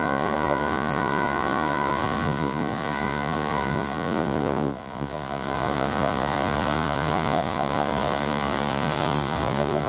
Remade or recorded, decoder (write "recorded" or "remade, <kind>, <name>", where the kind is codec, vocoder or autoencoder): remade, vocoder, Vocos